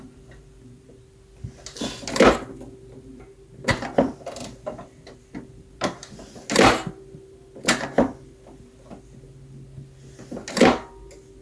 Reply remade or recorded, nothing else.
recorded